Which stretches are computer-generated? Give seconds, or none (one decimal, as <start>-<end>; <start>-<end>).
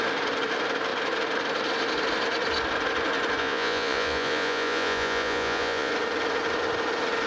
3.4-5.9